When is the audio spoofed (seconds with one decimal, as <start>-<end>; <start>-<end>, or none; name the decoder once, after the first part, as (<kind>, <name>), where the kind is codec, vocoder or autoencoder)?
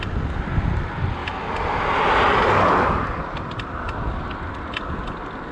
none